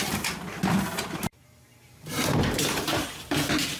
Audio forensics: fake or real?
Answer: fake